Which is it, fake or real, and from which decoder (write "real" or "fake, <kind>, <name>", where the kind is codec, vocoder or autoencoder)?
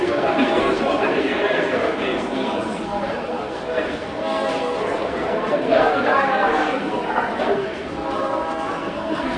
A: fake, codec, SNAC